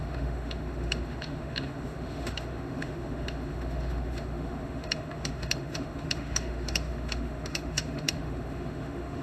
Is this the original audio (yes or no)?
no